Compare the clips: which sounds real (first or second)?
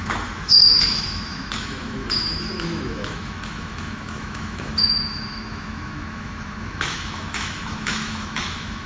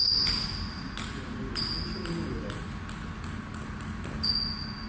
second